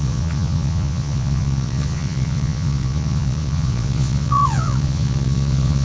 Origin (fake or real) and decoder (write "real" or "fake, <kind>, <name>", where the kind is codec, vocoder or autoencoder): fake, vocoder, Vocos